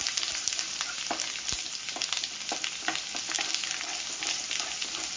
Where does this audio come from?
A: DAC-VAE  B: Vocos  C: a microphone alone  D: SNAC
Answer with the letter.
C